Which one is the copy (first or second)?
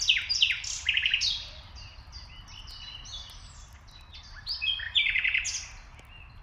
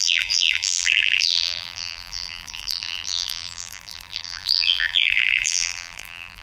second